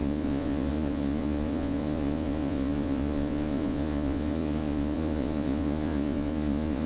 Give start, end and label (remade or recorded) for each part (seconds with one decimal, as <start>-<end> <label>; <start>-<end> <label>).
0.0-6.9 remade